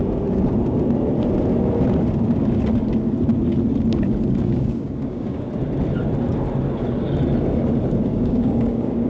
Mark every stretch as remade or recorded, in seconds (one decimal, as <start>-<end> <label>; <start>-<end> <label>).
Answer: 0.0-4.4 recorded; 4.4-5.5 remade; 5.5-8.1 recorded; 8.1-9.1 remade